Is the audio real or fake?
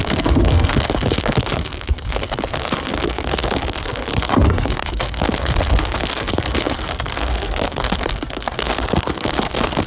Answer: fake